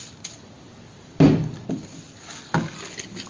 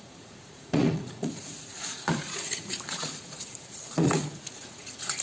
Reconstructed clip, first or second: second